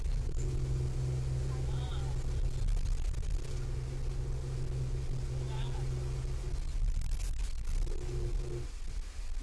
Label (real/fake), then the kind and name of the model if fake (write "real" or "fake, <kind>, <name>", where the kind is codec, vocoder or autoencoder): real